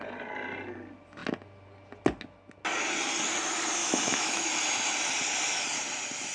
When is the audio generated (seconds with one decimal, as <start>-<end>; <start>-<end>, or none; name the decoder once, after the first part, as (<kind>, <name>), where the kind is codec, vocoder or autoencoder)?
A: 3.8-4.5 (autoencoder, DAC-VAE)